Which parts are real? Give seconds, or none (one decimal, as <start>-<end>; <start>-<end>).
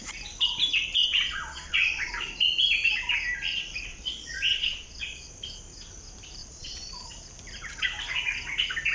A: 0.0-1.0; 2.1-3.9; 5.3-6.4; 6.9-8.9